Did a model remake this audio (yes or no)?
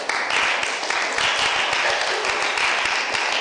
no